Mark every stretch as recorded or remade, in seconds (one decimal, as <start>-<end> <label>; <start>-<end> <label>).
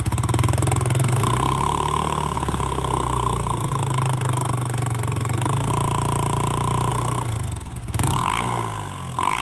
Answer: 0.0-5.7 remade; 5.7-6.9 recorded; 6.9-9.4 remade